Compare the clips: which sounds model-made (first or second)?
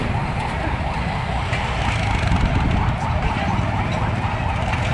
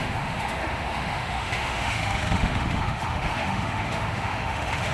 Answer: second